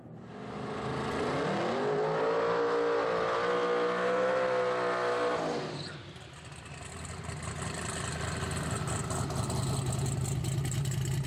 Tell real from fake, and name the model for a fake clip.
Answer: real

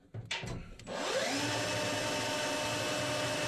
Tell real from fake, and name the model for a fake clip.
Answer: real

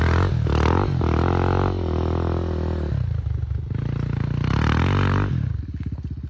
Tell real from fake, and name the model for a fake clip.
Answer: real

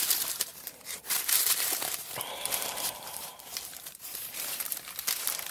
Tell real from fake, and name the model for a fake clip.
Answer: fake, vocoder, BigVGAN v2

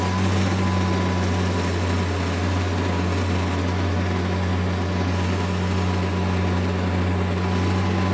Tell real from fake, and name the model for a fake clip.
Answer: real